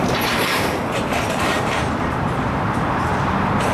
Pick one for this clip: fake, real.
fake